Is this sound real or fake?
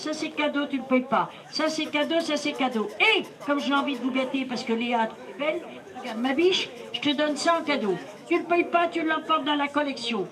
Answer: fake